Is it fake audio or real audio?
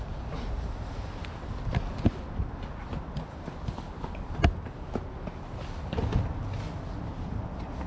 real